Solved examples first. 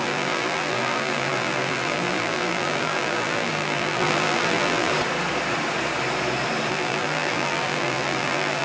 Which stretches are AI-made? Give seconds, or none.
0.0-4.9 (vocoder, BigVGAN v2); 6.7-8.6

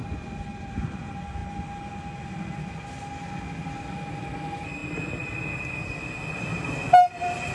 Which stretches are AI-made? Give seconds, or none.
none

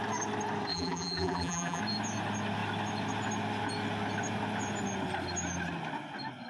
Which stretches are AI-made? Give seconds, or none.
0.7-1.8 (vocoder, BigVGAN v2)

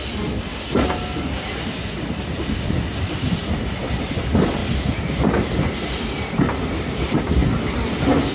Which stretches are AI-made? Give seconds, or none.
2.4-4.6 (vocoder, BigVGAN v2); 6.6-7.4

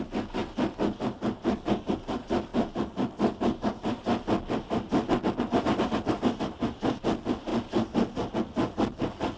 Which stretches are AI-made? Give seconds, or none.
none

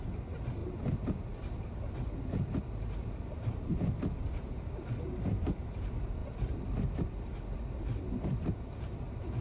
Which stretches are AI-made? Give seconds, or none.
none

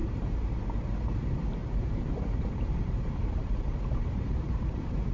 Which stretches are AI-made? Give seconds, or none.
0.0-0.6 (vocoder, BigVGAN v2); 1.6-5.1

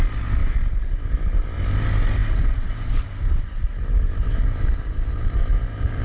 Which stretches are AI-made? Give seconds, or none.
0.4-1.1 (vocoder, BigVGAN v2); 2.2-6.0